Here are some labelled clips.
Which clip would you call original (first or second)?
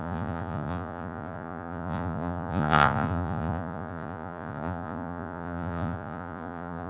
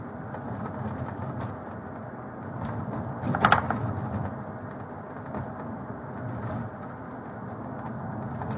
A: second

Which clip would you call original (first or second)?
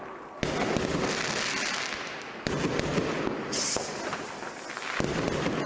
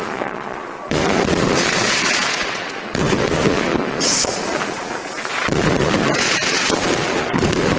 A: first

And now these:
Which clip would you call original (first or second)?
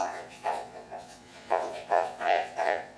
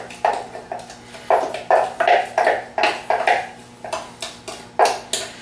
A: second